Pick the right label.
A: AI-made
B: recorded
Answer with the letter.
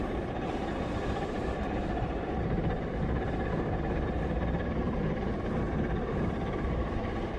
A